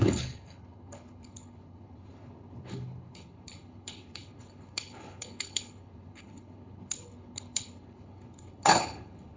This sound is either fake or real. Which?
fake